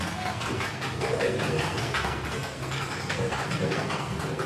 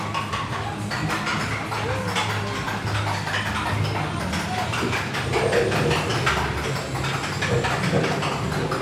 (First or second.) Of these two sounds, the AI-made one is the first